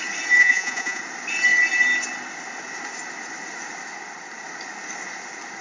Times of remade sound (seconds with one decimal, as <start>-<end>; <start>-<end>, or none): 0.4-1.0